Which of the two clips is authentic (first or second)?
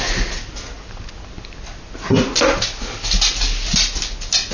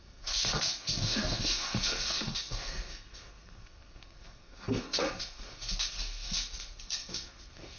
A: first